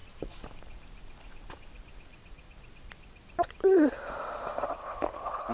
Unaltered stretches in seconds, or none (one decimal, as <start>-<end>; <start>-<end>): 0.0-4.8